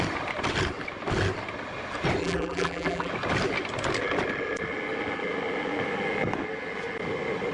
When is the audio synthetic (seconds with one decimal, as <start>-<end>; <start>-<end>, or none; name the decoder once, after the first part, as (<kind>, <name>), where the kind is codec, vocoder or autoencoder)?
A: 2.2-3.1 (vocoder, BigVGAN v2)